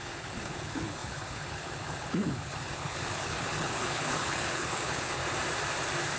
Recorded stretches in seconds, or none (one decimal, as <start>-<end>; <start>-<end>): 5.2-6.2